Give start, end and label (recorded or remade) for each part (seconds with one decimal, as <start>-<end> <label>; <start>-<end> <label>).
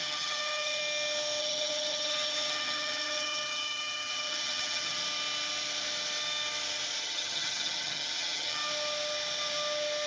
0.0-0.8 remade; 0.8-1.4 recorded; 1.4-5.0 remade; 5.0-7.0 recorded; 7.0-8.6 remade; 8.6-10.1 recorded